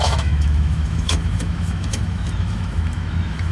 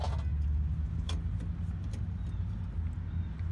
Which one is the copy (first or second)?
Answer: first